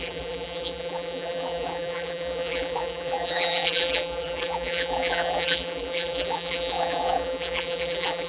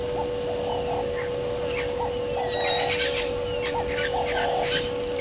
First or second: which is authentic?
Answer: second